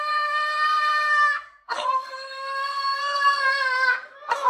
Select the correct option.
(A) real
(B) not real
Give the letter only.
B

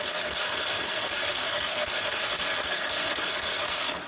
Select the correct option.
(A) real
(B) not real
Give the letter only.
B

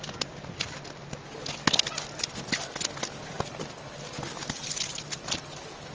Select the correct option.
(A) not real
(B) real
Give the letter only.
B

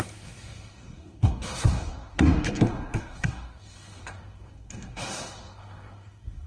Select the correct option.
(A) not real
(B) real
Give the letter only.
A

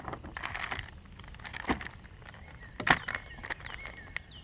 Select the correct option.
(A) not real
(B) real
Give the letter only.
B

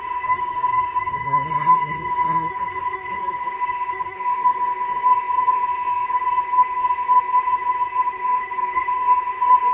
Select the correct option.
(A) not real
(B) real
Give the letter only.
A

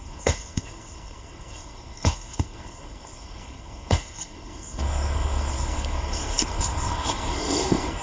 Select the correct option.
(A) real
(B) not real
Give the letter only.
B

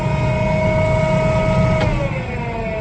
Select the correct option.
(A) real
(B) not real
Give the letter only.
A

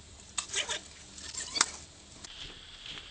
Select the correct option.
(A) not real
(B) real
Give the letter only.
B